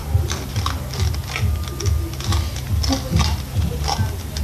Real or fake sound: real